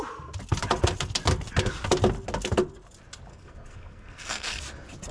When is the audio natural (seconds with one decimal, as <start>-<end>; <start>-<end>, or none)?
0.0-3.3; 4.6-5.1